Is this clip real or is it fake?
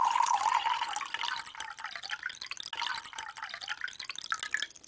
real